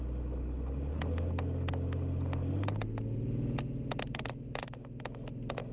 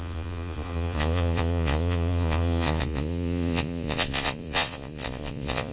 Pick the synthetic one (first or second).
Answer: second